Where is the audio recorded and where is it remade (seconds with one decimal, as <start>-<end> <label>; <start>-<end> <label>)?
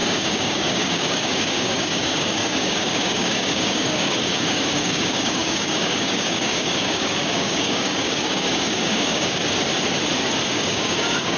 0.0-9.4 remade; 9.4-10.5 recorded; 10.5-11.4 remade